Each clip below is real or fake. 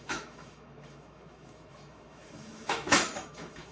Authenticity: fake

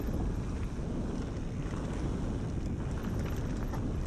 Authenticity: real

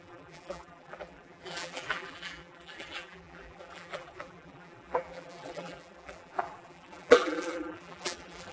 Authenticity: fake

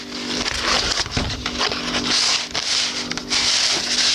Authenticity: real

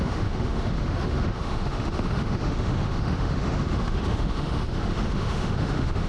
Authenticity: fake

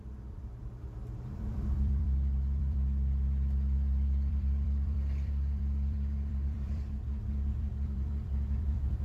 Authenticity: fake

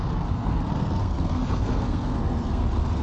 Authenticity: fake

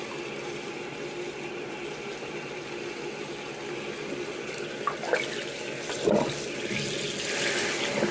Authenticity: real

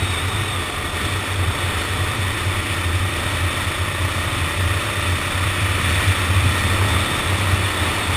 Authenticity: real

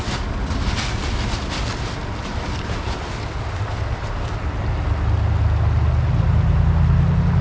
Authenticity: real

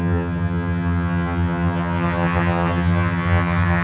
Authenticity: fake